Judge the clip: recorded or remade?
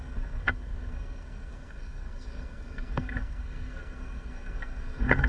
remade